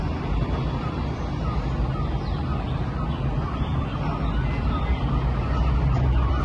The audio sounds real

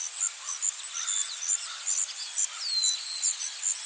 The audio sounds real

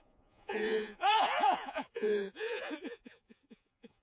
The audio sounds fake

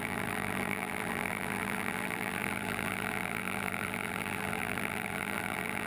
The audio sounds fake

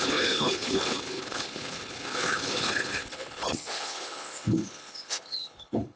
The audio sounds fake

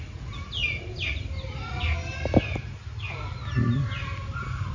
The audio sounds real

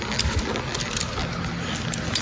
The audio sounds real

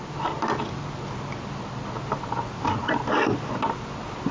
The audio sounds real